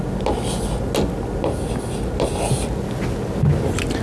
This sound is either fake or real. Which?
real